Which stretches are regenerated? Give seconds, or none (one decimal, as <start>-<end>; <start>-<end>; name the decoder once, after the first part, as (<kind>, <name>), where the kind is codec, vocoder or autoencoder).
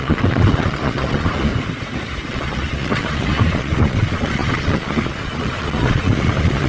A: 0.0-1.5 (vocoder, Vocos); 2.3-6.7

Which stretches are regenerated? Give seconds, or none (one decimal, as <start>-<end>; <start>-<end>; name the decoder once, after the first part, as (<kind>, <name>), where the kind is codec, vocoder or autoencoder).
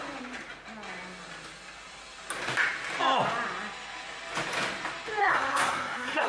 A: 5.2-6.3 (codec, SNAC)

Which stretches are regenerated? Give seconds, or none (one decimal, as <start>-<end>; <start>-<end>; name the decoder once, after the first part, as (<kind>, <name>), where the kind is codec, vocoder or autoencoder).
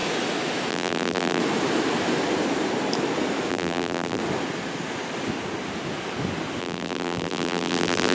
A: 0.7-1.4 (vocoder, BigVGAN v2); 3.5-4.2; 6.6-8.1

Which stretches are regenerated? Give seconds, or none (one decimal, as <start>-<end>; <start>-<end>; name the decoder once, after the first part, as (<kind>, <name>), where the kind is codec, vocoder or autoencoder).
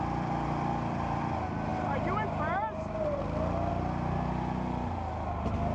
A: none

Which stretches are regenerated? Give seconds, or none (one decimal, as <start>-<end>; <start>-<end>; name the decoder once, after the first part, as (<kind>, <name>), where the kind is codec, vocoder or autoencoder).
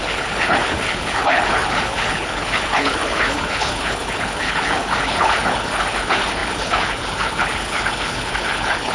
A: 0.0-8.9 (codec, HILCodec)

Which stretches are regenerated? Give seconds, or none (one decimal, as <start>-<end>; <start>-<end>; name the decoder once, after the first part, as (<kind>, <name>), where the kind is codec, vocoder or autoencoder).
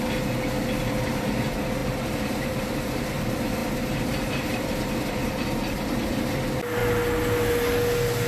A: 1.8-2.6 (vocoder, BigVGAN v2); 3.6-5.8